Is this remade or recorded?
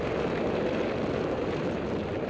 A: recorded